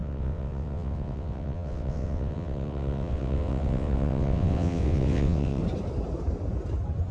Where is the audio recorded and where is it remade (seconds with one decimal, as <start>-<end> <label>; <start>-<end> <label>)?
0.0-5.6 remade; 5.6-7.1 recorded